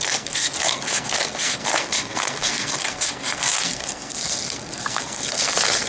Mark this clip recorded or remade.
remade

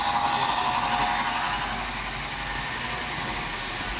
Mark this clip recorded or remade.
recorded